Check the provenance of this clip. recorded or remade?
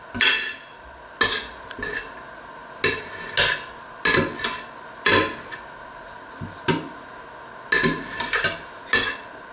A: recorded